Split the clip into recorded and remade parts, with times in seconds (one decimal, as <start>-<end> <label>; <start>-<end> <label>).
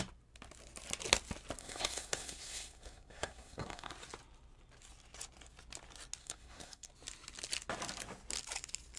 0.0-1.6 recorded; 1.6-3.9 remade; 3.9-6.2 recorded; 6.2-6.9 remade; 6.9-9.0 recorded